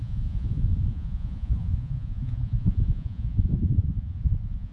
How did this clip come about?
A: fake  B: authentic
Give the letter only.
A